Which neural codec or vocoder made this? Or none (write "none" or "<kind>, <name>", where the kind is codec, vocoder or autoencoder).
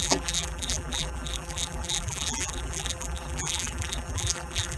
vocoder, BigVGAN v2